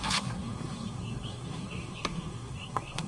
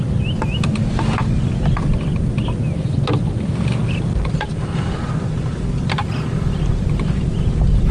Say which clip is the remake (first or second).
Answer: first